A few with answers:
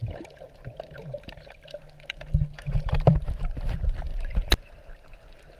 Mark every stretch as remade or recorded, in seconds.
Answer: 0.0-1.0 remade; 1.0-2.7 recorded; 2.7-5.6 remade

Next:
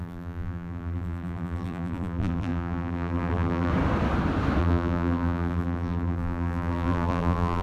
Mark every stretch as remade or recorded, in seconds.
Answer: 0.0-3.7 remade; 3.7-4.6 recorded; 4.6-7.6 remade